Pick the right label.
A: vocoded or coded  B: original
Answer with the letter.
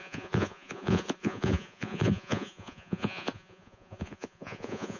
A